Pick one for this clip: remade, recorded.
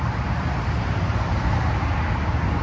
recorded